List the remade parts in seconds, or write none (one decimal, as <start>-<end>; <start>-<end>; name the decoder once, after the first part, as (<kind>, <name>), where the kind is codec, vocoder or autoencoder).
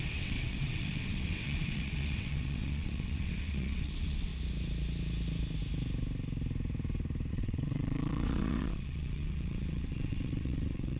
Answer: 0.0-4.3 (vocoder, WaveNeXt); 7.3-11.0